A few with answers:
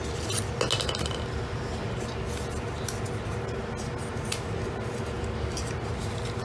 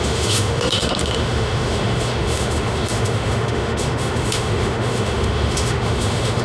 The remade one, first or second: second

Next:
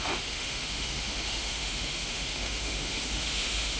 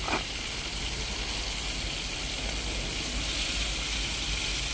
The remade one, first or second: first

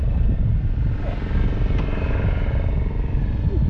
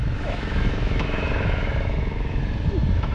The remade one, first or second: second